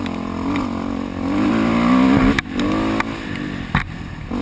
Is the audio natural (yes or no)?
yes